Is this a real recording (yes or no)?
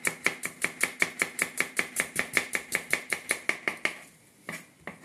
yes